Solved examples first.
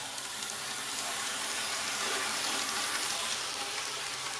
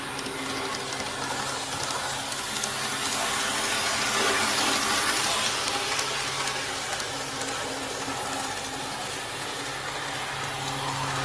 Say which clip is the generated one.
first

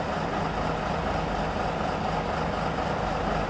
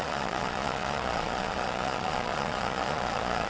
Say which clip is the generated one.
second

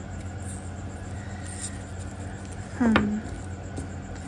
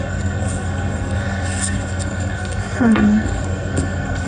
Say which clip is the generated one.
second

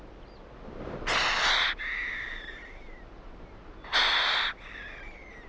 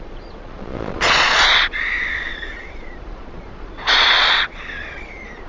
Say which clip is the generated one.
second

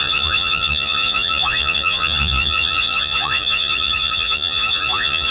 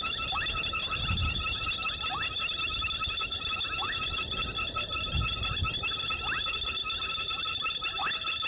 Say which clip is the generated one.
first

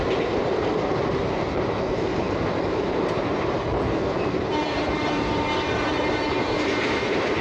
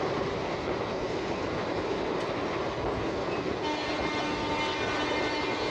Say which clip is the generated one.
first